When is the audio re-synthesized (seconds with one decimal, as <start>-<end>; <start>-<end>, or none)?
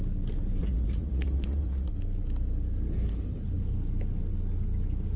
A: 0.6-1.9